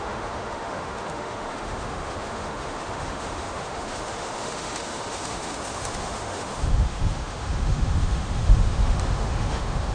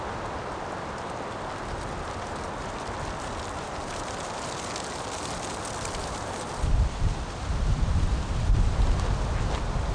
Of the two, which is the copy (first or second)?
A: first